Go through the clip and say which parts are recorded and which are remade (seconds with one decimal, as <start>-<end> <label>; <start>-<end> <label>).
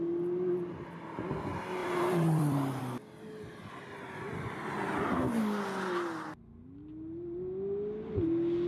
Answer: 0.0-1.8 recorded; 1.8-2.8 remade; 2.8-8.7 recorded